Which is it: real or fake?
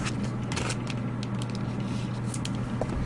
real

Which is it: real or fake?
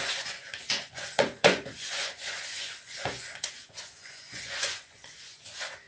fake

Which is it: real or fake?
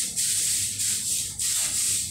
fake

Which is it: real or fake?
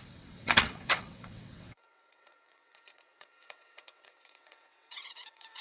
fake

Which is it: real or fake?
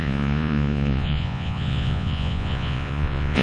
fake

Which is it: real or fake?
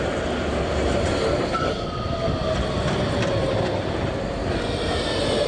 real